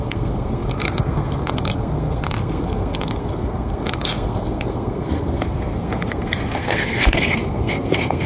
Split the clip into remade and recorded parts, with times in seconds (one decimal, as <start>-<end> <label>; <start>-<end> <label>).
0.0-8.3 remade